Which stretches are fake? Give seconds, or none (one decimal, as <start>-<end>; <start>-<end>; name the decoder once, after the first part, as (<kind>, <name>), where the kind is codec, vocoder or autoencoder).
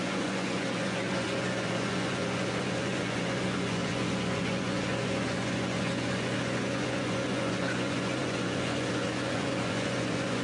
0.0-10.4 (vocoder, Vocos)